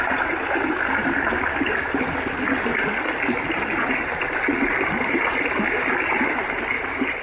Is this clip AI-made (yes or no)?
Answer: no